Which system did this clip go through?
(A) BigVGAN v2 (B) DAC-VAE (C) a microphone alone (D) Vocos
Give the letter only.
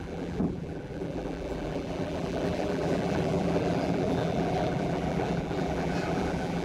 A